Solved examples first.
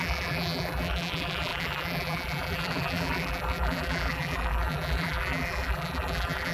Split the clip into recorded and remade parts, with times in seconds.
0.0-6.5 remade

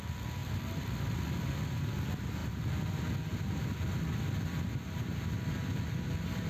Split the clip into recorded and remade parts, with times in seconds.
0.0-6.5 recorded